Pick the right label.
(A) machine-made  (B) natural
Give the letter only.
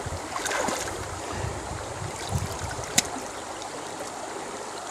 A